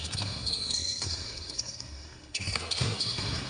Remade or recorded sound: remade